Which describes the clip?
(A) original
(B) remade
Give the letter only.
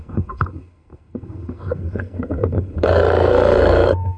B